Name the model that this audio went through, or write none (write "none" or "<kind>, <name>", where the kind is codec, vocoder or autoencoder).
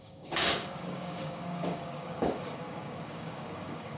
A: codec, DAC